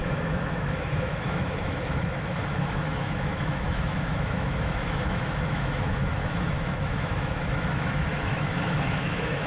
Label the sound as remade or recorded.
remade